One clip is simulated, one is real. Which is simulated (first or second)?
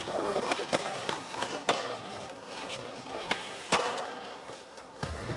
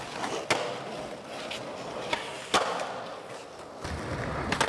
first